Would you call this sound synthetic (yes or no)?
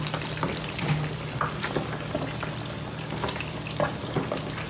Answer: no